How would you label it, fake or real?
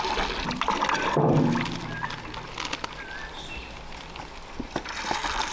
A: real